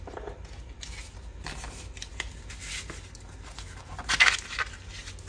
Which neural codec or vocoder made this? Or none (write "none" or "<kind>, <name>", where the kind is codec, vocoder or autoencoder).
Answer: none